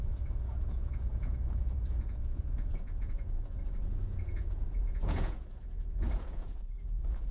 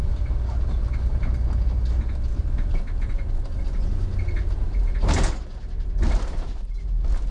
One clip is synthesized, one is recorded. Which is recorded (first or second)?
second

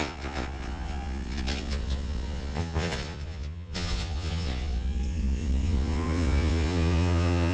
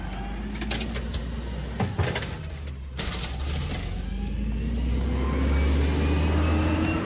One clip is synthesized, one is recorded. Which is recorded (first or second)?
second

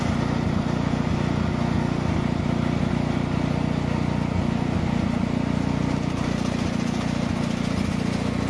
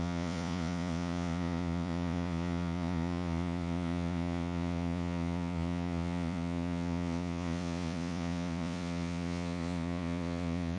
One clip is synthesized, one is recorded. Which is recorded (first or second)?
first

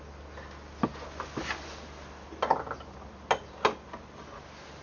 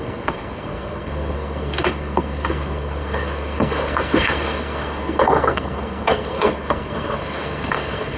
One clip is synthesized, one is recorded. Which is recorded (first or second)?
first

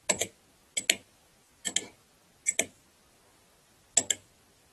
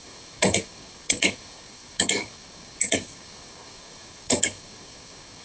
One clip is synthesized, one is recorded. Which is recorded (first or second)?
first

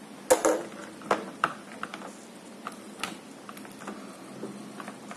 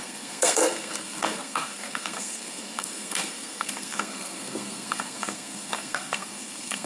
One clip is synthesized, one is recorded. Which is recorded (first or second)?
first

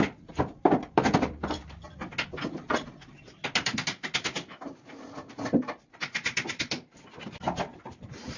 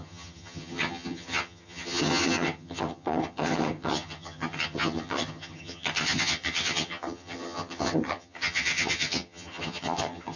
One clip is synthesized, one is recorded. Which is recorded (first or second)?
first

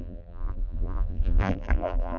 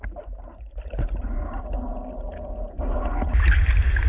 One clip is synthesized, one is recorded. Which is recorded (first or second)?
second